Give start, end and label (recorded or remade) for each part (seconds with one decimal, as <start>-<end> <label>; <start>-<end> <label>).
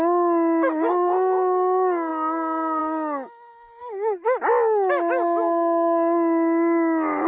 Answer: 0.0-7.3 recorded